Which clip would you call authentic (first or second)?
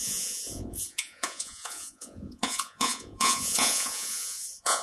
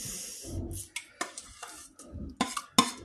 second